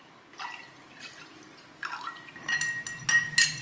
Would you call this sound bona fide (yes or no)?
yes